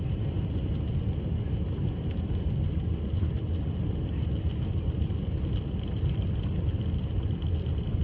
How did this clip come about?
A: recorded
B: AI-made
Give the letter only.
A